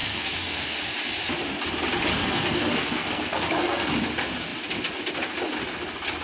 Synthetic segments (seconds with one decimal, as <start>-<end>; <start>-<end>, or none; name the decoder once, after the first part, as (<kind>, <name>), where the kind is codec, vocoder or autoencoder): 0.0-0.8 (codec, SNAC); 2.2-3.9

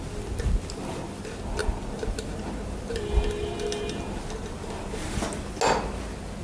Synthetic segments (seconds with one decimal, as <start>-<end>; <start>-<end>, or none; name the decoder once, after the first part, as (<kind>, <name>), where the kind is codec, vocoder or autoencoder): none

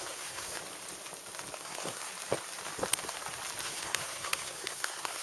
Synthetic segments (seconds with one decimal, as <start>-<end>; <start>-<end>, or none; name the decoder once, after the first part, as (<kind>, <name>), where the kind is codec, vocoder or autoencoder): 0.0-0.6 (codec, SNAC); 1.6-2.1; 3.6-5.2

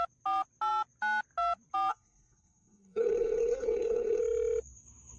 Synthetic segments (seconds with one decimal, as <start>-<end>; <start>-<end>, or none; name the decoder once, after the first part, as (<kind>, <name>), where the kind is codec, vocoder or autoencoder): 1.9-4.2 (codec, SNAC)

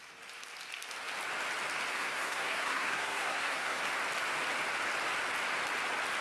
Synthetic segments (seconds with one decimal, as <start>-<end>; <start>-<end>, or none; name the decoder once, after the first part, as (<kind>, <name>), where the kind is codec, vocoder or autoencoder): 1.9-3.8 (codec, SNAC)

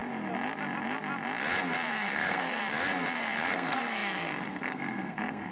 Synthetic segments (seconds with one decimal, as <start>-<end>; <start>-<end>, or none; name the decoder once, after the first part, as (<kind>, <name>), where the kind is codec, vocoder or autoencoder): 1.9-2.6 (codec, SNAC); 3.2-5.5

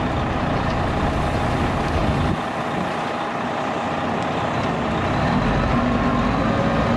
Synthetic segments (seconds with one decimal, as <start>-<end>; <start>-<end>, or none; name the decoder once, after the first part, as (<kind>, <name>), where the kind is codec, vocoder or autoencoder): none